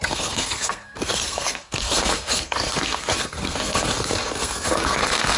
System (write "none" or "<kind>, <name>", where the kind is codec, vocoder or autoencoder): codec, SNAC